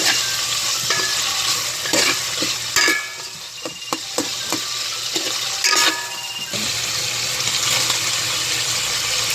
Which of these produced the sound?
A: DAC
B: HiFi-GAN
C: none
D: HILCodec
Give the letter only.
C